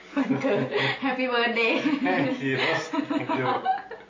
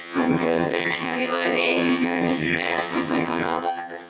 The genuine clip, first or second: first